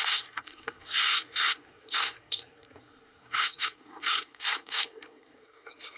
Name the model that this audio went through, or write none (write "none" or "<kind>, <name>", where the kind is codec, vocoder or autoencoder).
codec, SNAC